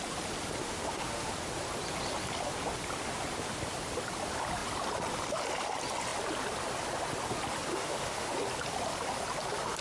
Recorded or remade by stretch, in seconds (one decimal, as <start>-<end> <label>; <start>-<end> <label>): 0.0-0.6 recorded; 0.6-1.3 remade; 1.3-7.7 recorded; 7.7-8.3 remade; 8.3-9.8 recorded